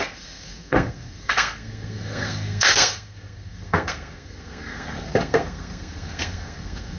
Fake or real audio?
fake